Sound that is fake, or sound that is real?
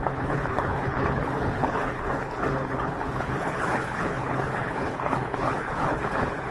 fake